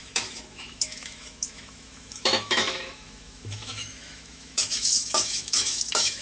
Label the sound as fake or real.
fake